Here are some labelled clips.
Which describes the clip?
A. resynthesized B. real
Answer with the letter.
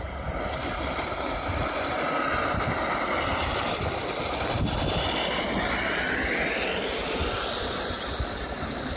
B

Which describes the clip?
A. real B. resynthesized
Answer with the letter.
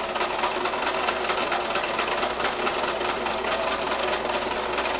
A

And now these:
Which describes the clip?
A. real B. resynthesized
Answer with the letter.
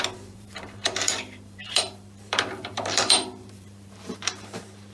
B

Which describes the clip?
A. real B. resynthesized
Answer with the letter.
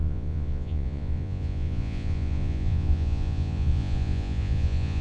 B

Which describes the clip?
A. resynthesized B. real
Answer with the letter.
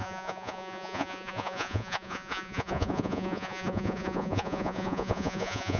A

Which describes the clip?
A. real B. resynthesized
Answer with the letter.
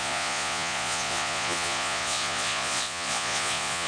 B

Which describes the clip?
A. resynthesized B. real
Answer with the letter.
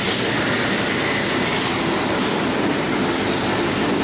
B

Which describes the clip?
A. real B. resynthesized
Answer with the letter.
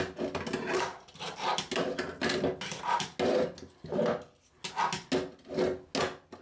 A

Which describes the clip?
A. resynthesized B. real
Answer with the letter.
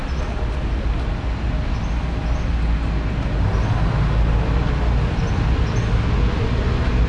B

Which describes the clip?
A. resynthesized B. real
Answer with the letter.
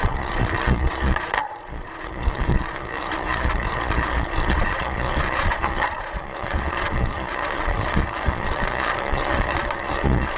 A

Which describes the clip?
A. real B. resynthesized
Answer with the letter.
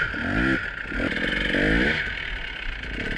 A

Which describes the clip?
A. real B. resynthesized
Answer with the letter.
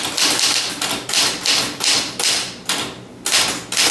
A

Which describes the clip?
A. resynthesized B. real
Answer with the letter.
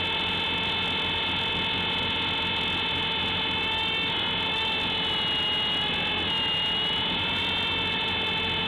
B